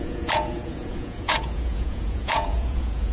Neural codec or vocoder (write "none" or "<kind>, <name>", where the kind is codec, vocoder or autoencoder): vocoder, Vocos